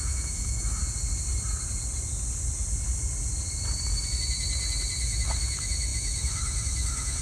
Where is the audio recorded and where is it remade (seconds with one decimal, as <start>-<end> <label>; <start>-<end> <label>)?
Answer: 0.0-0.8 remade; 0.8-5.0 recorded; 5.0-7.2 remade